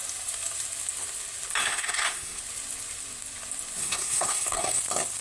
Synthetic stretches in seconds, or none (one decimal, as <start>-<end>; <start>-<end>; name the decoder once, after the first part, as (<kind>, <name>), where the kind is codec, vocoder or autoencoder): 1.6-2.4 (codec, SNAC); 3.8-4.8